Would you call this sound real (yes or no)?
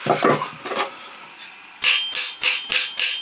yes